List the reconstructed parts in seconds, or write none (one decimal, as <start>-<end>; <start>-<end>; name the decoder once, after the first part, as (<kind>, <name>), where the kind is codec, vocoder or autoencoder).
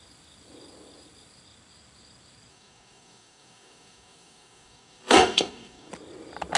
2.5-5.9 (codec, DAC)